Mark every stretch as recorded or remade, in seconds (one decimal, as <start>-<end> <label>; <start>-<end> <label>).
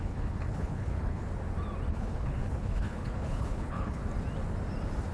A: 0.0-1.2 remade; 1.2-1.9 recorded; 1.9-4.0 remade; 4.0-5.1 recorded